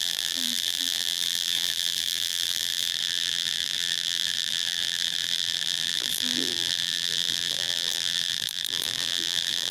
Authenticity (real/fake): fake